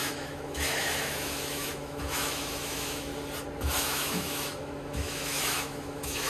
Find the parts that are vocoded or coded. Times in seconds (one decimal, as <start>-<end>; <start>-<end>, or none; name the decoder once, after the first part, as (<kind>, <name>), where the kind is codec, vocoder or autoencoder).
0.0-3.1 (autoencoder, DAC-VAE); 3.8-6.3